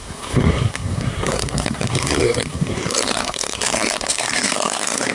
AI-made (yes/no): yes